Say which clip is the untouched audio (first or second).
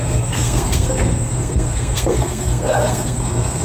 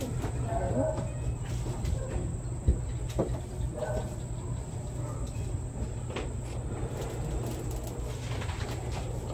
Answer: second